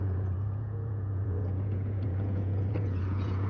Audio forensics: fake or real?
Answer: fake